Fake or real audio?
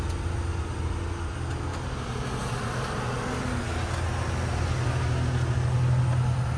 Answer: real